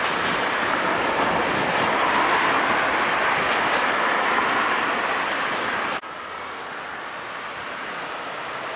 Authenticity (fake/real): real